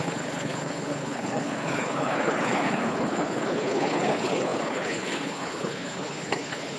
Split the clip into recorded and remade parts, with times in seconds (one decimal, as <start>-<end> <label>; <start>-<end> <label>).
0.0-6.8 remade